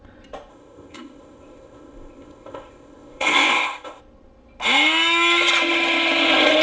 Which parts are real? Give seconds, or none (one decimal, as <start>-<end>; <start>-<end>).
0.0-0.5; 4.0-6.6